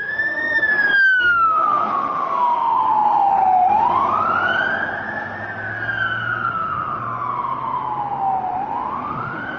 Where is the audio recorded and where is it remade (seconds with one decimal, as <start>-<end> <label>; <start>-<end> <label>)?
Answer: 0.0-0.7 remade; 0.7-1.2 recorded; 1.2-3.3 remade; 3.3-6.5 recorded; 6.5-7.0 remade; 7.0-9.0 recorded; 9.0-9.6 remade